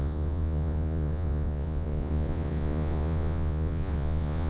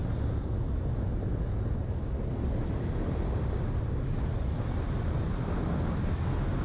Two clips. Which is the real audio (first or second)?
second